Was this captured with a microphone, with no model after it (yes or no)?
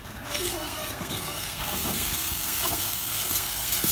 no